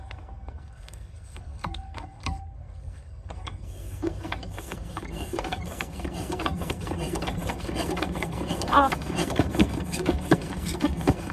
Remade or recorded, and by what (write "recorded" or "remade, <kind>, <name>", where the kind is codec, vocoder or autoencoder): remade, codec, SNAC